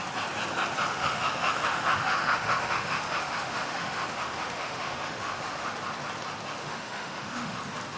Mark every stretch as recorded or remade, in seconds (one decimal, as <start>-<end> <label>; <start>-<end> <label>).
0.0-0.9 recorded; 0.9-5.7 remade; 5.7-6.6 recorded; 6.6-7.6 remade; 7.6-8.0 recorded